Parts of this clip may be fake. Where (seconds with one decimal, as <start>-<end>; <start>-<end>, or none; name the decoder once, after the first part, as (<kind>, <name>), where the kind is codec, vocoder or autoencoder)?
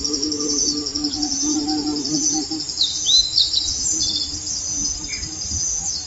none